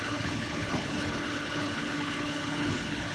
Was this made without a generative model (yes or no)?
no